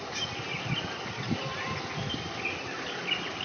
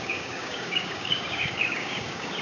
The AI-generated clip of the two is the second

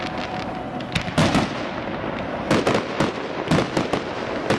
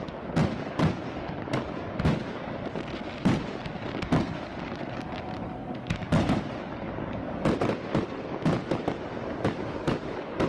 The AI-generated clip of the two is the second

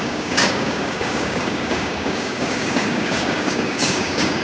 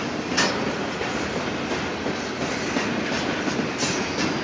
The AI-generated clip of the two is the first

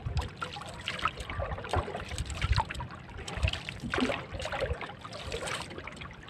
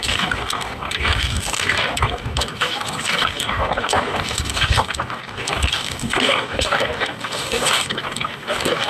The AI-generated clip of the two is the second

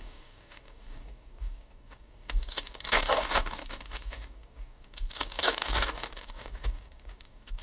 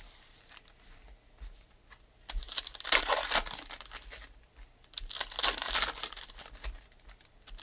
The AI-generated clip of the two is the first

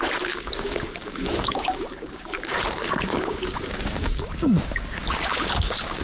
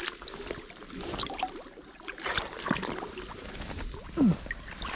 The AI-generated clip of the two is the first